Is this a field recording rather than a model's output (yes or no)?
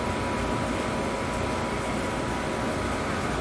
yes